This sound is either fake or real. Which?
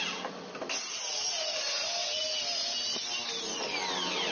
real